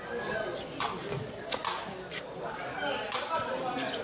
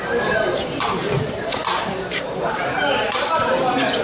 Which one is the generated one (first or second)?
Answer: second